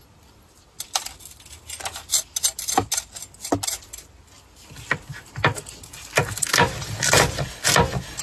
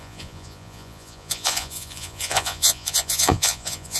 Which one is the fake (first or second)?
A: second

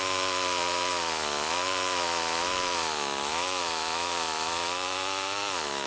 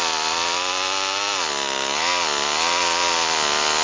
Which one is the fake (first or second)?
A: first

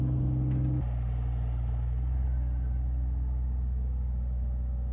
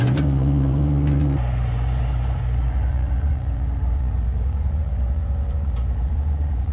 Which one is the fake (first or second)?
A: second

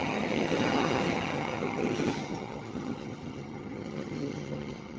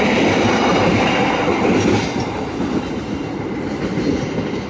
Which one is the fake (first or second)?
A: first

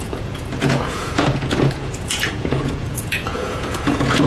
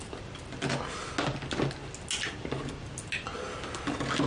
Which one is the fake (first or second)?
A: first